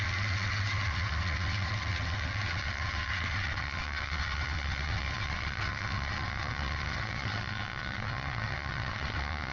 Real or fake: fake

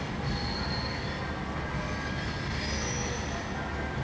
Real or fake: real